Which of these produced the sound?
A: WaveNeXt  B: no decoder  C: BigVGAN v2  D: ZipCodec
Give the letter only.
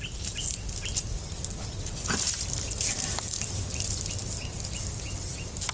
B